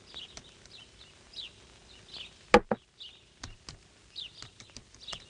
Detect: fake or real real